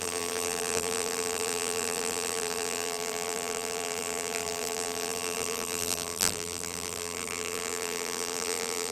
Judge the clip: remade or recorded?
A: remade